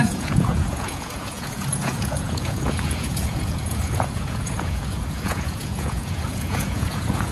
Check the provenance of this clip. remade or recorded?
remade